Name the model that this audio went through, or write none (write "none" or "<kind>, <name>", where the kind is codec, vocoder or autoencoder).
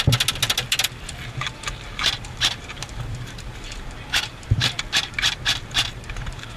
none